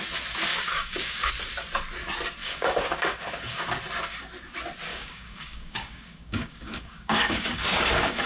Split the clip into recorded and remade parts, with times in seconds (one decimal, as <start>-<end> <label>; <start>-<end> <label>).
0.0-0.5 recorded; 0.5-1.3 remade; 1.3-2.4 recorded; 2.4-3.6 remade; 3.6-4.9 recorded; 4.9-8.3 remade